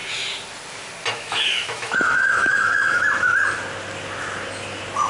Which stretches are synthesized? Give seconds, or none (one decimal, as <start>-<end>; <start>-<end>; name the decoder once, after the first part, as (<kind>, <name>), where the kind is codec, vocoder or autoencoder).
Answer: 1.1-3.3 (autoencoder, DAC-VAE)